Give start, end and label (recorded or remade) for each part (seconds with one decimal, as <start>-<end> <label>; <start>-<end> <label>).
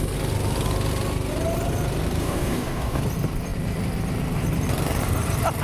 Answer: 0.0-2.2 recorded; 2.2-3.0 remade; 3.0-5.6 recorded